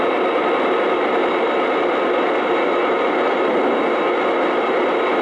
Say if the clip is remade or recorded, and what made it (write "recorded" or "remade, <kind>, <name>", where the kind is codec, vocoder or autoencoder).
recorded